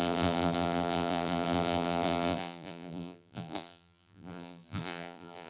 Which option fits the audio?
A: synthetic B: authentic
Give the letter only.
A